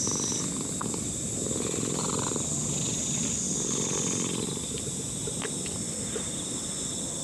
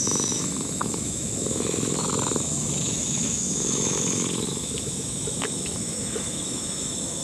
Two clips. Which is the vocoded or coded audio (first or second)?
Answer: second